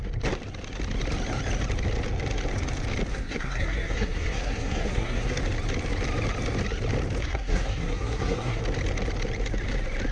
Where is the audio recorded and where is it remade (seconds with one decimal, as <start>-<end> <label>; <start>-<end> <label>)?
0.0-3.1 recorded; 3.1-5.4 remade; 5.4-7.2 recorded; 7.2-8.6 remade; 8.6-10.1 recorded